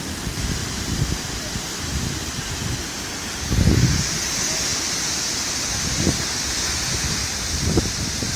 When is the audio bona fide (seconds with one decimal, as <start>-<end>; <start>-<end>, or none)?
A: 0.0-0.6; 2.5-4.7; 5.9-8.4